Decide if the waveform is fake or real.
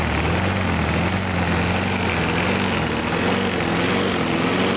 real